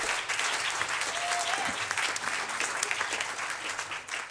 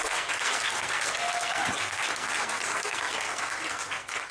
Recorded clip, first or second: first